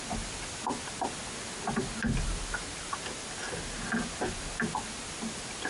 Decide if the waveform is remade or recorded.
recorded